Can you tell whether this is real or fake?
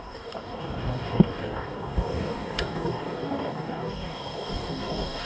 fake